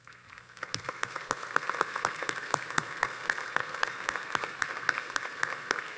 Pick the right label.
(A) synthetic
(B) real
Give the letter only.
A